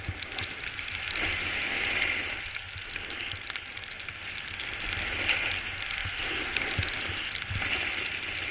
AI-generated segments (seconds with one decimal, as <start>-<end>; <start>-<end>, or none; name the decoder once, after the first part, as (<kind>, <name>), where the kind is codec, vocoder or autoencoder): none